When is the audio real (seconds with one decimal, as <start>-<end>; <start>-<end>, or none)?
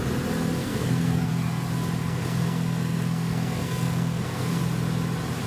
0.0-0.6; 1.3-2.0; 4.6-5.5